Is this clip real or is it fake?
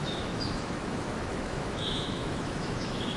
fake